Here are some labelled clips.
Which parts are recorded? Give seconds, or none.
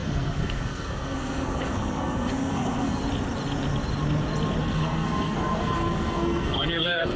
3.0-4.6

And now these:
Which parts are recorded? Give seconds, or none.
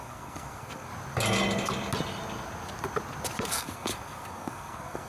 0.9-3.5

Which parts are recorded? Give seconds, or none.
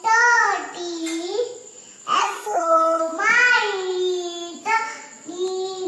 0.0-2.2; 3.0-5.9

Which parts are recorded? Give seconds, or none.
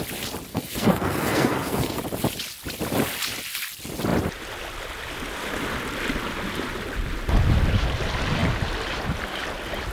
0.0-0.5; 2.0-9.9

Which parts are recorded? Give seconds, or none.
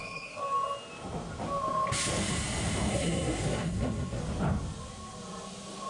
0.4-2.9; 4.2-5.9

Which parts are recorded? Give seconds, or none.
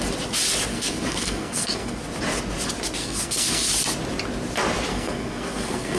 0.0-0.7; 2.0-3.0; 3.7-4.9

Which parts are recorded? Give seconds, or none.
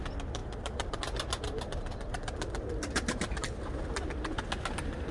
0.0-5.1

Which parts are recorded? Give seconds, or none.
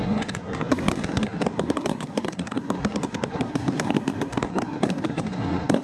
none